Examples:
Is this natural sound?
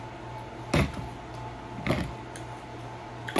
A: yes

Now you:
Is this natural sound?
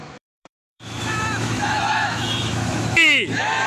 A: no